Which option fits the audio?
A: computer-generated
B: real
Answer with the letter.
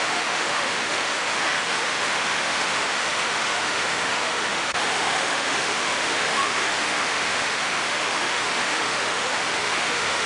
A